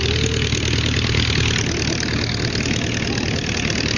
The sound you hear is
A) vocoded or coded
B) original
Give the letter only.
B